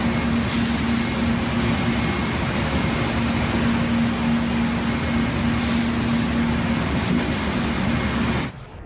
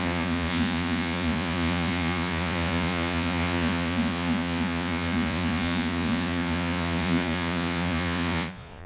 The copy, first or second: second